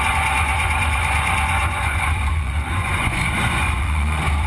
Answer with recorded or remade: remade